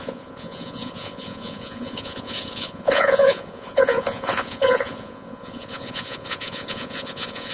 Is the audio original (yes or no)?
no